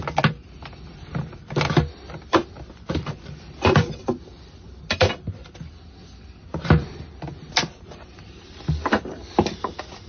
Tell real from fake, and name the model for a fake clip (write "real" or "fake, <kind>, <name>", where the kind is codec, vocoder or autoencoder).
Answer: real